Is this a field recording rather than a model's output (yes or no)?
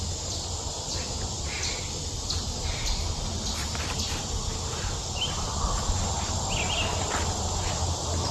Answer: yes